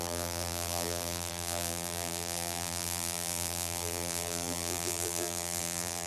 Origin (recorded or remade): remade